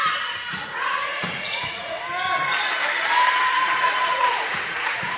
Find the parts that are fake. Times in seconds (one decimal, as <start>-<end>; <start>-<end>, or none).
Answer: 0.5-2.0; 3.5-5.2